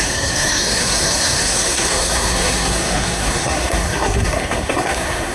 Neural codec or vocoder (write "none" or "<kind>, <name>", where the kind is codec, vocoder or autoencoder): codec, SNAC